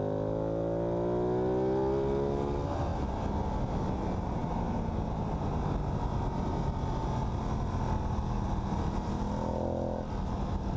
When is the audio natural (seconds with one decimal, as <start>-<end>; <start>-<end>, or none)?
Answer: 0.0-10.8